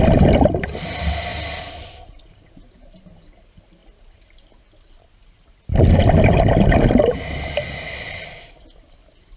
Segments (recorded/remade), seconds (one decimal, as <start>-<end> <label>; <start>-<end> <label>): 0.0-9.4 recorded